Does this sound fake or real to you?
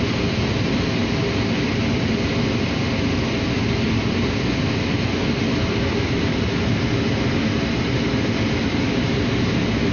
real